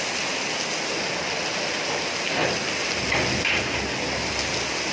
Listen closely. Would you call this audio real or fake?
real